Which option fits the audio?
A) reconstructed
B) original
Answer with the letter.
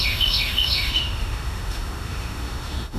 A